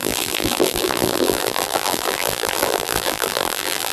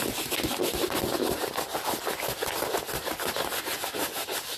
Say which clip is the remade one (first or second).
first